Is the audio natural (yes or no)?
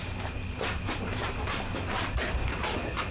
yes